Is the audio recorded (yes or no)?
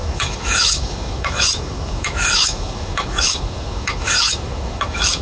no